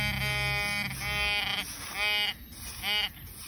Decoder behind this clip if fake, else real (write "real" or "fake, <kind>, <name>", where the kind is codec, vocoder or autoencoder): real